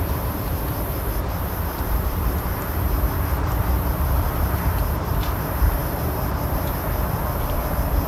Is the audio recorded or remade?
remade